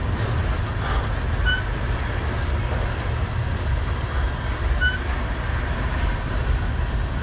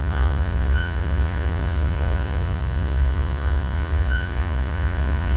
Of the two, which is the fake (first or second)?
second